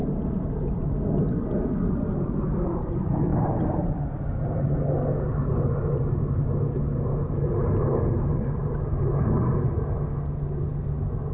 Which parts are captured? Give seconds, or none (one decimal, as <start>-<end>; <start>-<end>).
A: 0.9-3.3; 3.9-8.2; 9.1-11.3

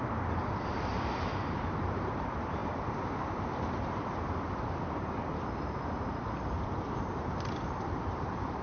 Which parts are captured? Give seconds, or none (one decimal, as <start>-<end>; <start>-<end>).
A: none

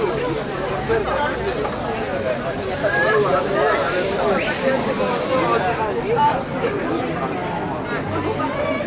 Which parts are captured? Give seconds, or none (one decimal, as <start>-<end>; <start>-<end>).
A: 0.0-8.9

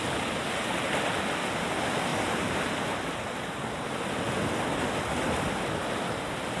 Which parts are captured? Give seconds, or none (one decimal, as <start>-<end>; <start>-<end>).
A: 0.0-2.1; 4.1-6.6